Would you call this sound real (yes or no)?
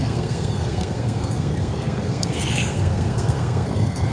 no